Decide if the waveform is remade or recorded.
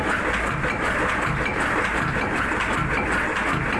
recorded